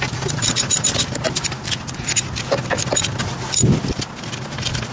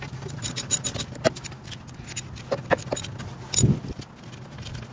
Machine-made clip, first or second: first